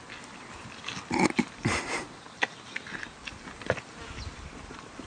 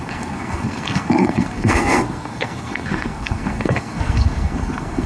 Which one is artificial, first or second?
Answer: second